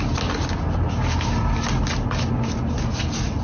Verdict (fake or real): real